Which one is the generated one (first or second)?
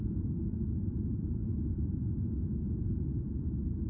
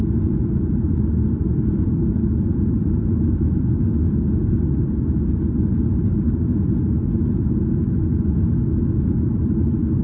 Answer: first